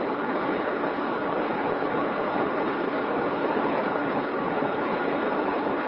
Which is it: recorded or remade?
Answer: remade